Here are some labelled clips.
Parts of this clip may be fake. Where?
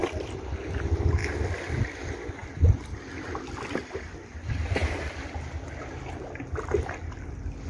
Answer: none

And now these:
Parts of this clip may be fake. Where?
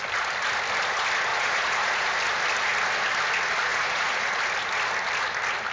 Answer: 1.3-2.1 (vocoder, Vocos); 3.7-4.3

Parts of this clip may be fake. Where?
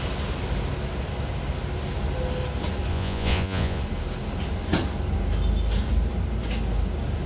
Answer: 2.9-3.8 (vocoder, Vocos)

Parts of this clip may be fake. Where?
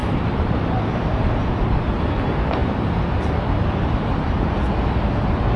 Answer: 0.0-1.5 (vocoder, BigVGAN v2)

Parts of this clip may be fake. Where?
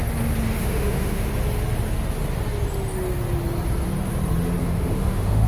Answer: 0.6-1.3 (autoencoder, DAC-VAE); 4.6-5.5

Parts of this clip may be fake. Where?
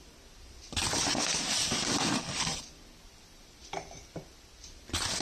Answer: none